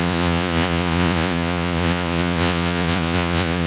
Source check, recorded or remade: remade